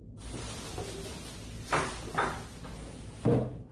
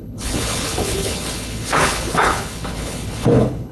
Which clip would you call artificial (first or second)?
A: second